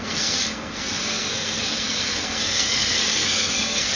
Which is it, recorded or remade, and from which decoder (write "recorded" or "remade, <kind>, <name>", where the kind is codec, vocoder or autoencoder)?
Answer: remade, codec, SNAC